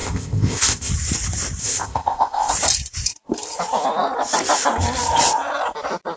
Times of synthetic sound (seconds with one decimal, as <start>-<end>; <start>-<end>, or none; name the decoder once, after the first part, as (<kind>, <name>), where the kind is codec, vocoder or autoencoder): 0.0-0.9 (codec, ZipCodec); 1.6-2.5